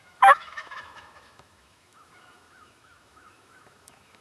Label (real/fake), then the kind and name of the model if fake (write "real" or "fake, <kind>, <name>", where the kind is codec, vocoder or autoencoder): fake, autoencoder, DAC-VAE